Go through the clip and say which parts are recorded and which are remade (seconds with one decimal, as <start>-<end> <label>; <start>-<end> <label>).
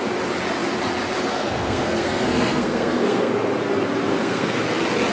0.0-1.3 recorded; 1.3-3.3 remade; 3.3-4.1 recorded; 4.1-4.6 remade; 4.6-5.1 recorded